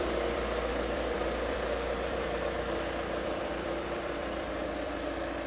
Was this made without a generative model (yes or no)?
no